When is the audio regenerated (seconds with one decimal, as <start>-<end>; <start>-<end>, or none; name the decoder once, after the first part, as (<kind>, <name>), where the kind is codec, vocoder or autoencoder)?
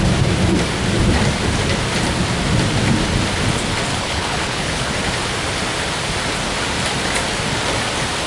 3.9-4.9 (codec, HILCodec)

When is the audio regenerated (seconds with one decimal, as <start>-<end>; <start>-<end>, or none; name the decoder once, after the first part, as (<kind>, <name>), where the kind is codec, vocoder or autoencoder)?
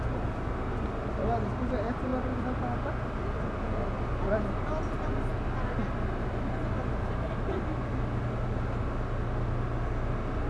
none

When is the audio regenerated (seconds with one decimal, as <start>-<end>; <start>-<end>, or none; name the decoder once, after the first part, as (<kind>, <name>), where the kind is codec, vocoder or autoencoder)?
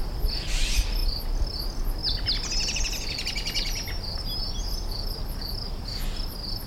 none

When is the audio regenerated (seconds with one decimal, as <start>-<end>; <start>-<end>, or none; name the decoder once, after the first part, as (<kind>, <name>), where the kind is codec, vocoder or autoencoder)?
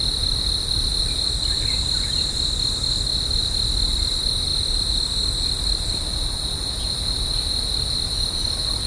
none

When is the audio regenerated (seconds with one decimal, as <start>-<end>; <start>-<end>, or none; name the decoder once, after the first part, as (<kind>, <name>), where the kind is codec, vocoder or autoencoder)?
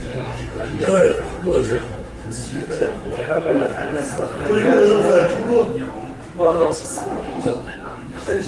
0.0-4.4 (codec, SNAC); 6.4-8.5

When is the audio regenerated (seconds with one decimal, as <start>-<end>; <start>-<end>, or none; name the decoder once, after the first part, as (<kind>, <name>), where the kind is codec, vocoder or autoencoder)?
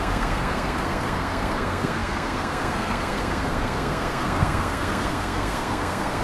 0.0-6.2 (codec, SNAC)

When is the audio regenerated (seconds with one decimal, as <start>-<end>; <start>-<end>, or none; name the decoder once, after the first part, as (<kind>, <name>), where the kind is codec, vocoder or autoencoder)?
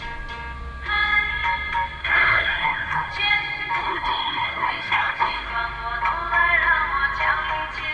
2.0-3.1 (codec, SNAC); 3.8-5.5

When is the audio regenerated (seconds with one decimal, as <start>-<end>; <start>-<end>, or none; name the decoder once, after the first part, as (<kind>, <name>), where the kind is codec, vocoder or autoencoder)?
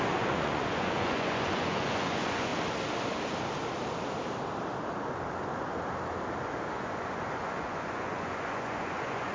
0.0-2.5 (vocoder, Vocos); 6.7-9.3